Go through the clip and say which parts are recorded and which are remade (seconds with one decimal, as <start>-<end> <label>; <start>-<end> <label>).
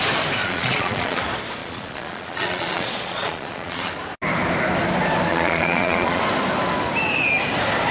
0.0-0.4 recorded; 0.4-1.2 remade; 1.2-1.6 recorded; 1.6-3.9 remade; 3.9-5.3 recorded; 5.3-6.2 remade; 6.2-7.9 recorded